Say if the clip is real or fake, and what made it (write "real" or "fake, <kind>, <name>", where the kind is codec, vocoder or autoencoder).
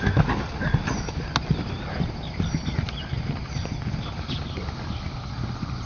real